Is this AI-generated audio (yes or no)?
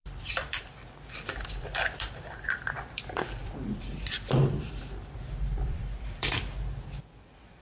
yes